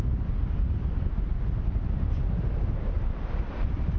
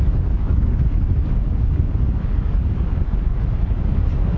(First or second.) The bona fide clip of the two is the first